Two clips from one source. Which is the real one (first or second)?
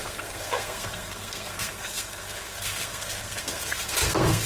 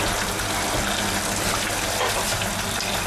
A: second